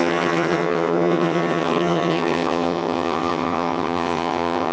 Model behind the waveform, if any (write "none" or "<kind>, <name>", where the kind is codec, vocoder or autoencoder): vocoder, HiFi-GAN